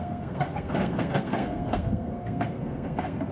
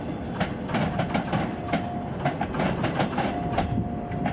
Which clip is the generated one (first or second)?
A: first